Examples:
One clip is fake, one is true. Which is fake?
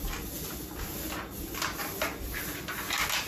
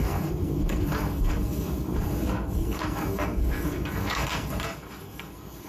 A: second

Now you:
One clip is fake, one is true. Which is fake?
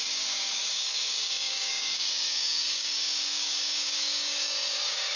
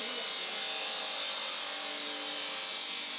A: first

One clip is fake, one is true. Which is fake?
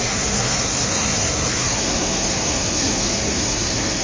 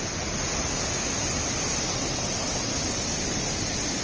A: first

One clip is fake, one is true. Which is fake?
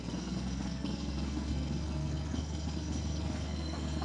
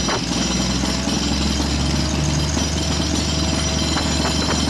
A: first